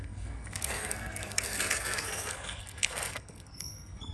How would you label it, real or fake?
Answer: fake